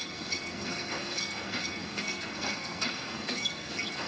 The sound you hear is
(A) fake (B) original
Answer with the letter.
A